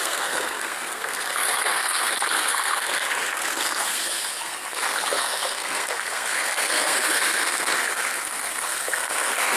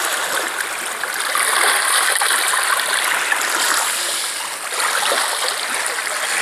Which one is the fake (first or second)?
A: first